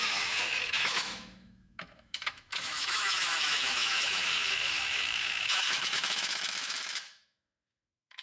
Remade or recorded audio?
remade